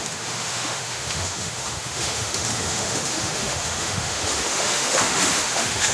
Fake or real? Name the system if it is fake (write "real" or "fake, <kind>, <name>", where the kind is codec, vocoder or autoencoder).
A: fake, autoencoder, DAC-VAE